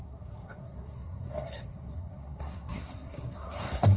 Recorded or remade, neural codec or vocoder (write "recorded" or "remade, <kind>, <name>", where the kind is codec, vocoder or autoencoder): remade, codec, SNAC